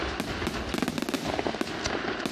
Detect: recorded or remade recorded